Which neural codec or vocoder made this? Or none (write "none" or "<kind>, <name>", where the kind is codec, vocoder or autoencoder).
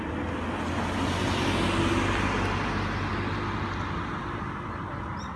none